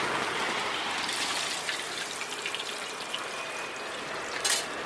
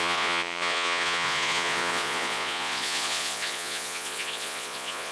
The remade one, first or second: second